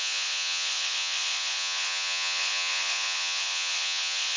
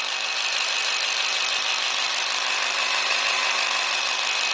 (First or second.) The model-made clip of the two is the first